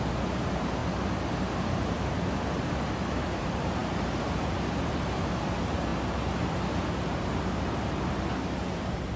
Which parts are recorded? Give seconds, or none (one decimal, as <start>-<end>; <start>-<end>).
0.8-1.4